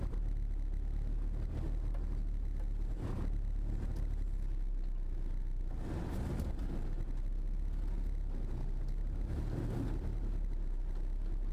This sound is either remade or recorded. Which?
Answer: recorded